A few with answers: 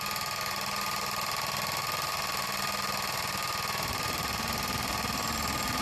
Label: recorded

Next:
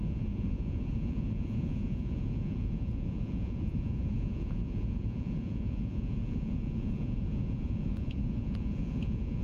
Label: remade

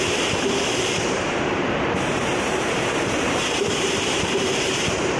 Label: remade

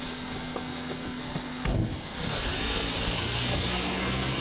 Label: remade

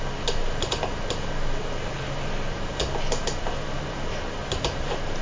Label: recorded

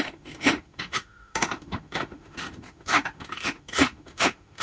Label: remade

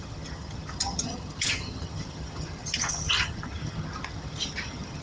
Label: remade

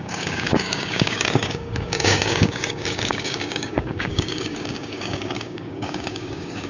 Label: remade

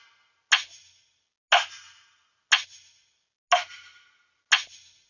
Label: recorded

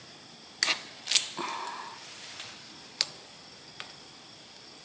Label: recorded